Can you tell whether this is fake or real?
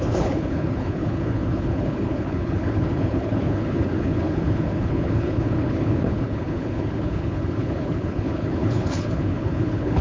fake